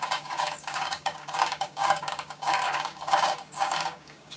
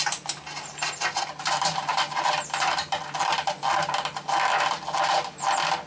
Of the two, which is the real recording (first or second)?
second